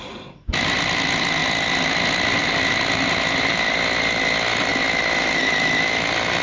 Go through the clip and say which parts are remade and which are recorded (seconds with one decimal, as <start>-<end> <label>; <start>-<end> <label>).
0.0-6.4 recorded